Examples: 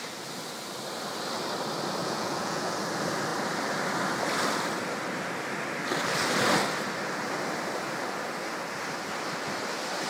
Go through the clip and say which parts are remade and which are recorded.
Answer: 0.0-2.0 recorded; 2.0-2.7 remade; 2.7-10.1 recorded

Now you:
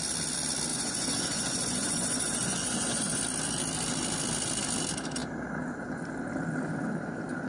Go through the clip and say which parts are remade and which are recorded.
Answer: 0.0-0.7 recorded; 0.7-3.2 remade; 3.2-7.5 recorded

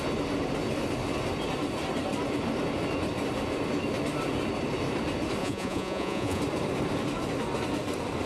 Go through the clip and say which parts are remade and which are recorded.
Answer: 0.0-5.4 recorded; 5.4-6.4 remade; 6.4-8.3 recorded

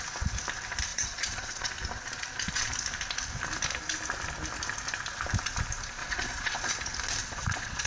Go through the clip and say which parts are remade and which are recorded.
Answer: 0.0-0.9 recorded; 0.9-1.7 remade; 1.7-6.0 recorded; 6.0-6.7 remade; 6.7-7.2 recorded; 7.2-7.9 remade

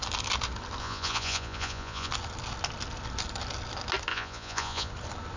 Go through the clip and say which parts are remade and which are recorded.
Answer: 0.0-0.8 recorded; 0.8-2.1 remade; 2.1-4.1 recorded; 4.1-4.9 remade; 4.9-5.4 recorded

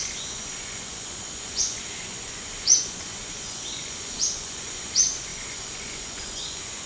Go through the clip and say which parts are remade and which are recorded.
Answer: 0.0-6.9 remade